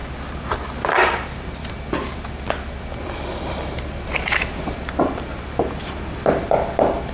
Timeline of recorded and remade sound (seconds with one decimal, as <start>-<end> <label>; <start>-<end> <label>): 0.0-0.6 recorded; 0.6-7.1 remade